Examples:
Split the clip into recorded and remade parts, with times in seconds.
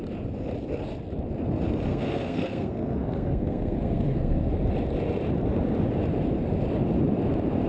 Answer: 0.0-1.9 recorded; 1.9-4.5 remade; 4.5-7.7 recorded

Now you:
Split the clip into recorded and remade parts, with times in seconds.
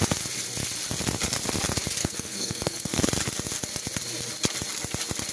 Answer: 0.0-2.0 recorded; 2.0-3.0 remade; 3.0-5.3 recorded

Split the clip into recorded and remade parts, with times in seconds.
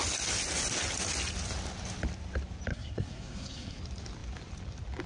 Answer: 0.0-2.7 recorded; 2.7-3.8 remade; 3.8-5.1 recorded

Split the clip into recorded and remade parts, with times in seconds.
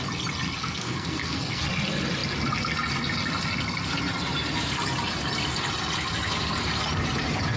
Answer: 0.0-0.6 recorded; 0.6-1.6 remade; 1.6-7.6 recorded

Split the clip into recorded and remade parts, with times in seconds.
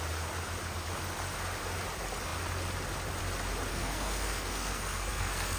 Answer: 0.0-3.7 recorded; 3.7-5.6 remade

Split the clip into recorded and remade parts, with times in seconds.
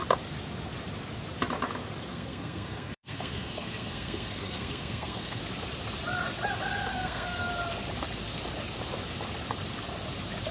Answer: 0.0-2.1 recorded; 2.1-5.4 remade; 5.4-6.9 recorded; 6.9-7.5 remade; 7.5-10.5 recorded